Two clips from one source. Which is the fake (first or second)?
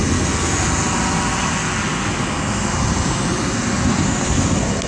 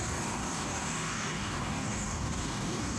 second